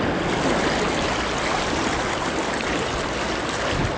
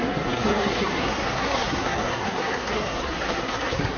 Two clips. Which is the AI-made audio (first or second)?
second